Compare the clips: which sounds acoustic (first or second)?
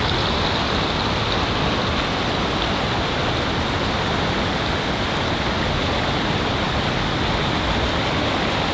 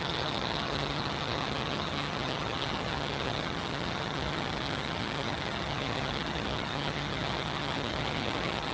first